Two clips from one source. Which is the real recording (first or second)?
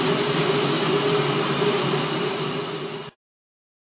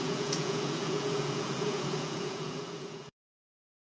first